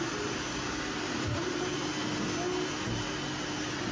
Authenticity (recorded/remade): recorded